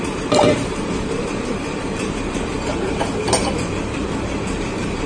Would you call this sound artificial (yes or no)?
yes